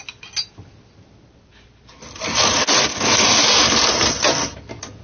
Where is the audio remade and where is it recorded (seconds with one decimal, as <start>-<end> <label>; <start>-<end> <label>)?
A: 0.0-5.0 recorded